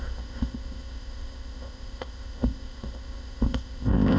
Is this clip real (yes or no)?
no